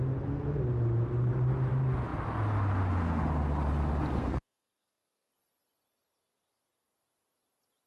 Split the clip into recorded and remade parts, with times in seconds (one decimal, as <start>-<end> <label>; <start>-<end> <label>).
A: 0.0-4.2 recorded; 4.2-5.3 remade; 5.3-7.9 recorded